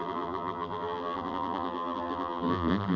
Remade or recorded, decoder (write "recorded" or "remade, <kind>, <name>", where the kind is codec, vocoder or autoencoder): remade, vocoder, BigVGAN v2